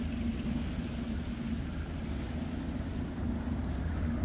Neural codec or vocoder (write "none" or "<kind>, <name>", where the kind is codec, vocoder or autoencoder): none